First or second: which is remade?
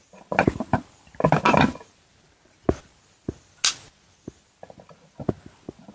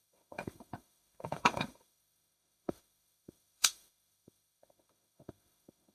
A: second